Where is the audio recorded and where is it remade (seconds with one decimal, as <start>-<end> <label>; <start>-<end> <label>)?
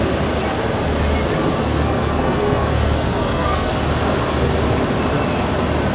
0.0-1.6 recorded; 1.6-3.7 remade; 3.7-5.9 recorded